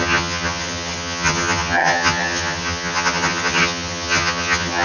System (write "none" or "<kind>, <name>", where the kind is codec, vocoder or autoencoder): vocoder, HiFi-GAN